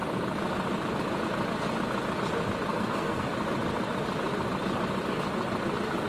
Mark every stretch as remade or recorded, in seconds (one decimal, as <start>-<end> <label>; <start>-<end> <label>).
0.0-2.7 recorded; 2.7-3.3 remade; 3.3-6.1 recorded